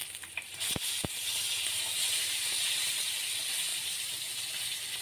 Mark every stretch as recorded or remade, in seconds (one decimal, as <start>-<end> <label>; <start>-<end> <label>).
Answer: 0.0-3.0 remade; 3.0-3.7 recorded; 3.7-4.3 remade; 4.3-5.0 recorded